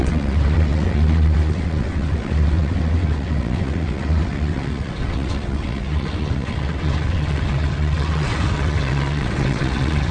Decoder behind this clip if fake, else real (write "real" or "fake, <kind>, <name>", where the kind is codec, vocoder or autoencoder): fake, vocoder, WaveNeXt